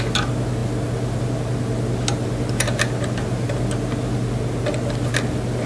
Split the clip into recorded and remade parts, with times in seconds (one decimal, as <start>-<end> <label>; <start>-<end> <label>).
0.0-5.7 recorded